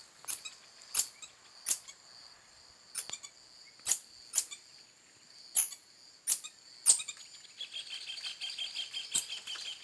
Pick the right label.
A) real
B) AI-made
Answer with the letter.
A